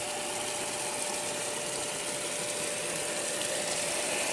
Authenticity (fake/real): real